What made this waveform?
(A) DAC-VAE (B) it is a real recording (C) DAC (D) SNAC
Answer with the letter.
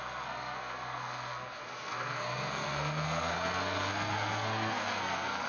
D